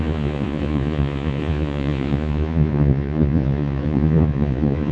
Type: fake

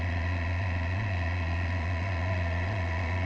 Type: fake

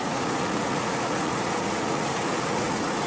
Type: fake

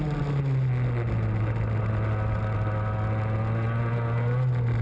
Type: real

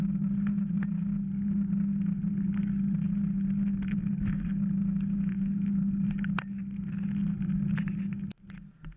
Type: real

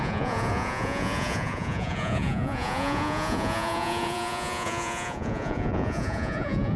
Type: fake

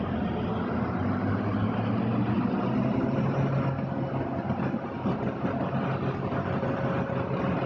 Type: real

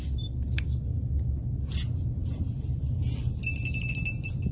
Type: real